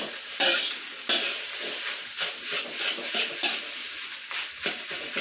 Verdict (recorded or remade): recorded